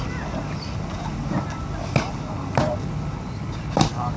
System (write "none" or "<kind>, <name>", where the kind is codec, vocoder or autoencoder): none